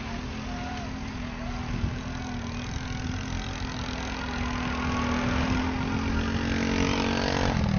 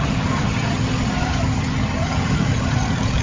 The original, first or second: first